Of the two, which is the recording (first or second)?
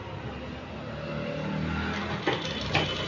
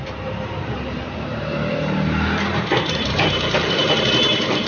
first